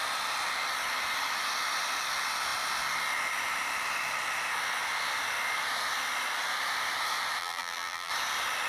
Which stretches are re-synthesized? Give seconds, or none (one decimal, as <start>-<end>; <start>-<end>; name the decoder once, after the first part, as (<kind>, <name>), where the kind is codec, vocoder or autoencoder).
7.4-8.1 (vocoder, BigVGAN v2)